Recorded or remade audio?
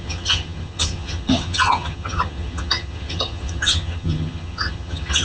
remade